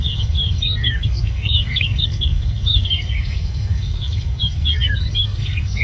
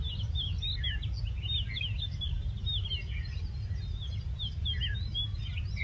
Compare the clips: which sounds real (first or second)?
second